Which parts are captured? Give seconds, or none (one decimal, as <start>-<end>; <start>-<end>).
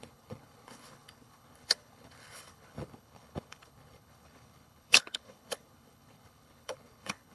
none